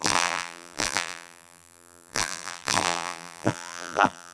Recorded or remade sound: remade